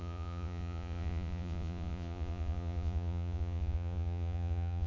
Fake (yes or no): yes